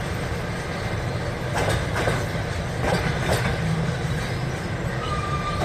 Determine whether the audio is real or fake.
real